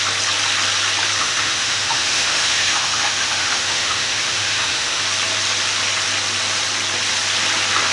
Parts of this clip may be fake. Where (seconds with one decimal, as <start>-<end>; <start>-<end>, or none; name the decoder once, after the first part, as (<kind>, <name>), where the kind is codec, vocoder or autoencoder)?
1.2-5.0 (autoencoder, DAC-VAE)

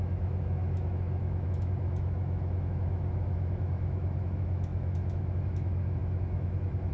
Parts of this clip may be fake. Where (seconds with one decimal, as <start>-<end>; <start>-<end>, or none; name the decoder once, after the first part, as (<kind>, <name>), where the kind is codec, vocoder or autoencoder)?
0.0-6.9 (autoencoder, DAC-VAE)

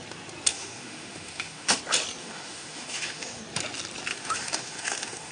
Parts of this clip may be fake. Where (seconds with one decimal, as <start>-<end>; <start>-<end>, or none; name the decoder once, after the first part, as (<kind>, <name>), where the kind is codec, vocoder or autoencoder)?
0.5-1.8 (autoencoder, DAC-VAE); 2.2-3.4; 4.1-5.3

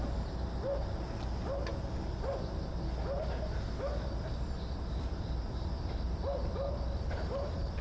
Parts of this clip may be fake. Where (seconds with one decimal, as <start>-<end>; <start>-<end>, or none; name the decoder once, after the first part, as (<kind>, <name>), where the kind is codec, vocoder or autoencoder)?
none

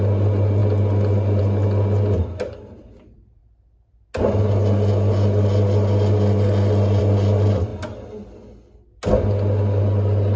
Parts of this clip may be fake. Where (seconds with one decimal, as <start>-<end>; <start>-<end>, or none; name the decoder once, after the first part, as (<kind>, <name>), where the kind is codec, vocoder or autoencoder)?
none